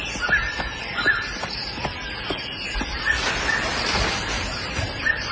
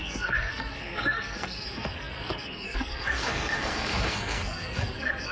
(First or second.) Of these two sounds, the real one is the first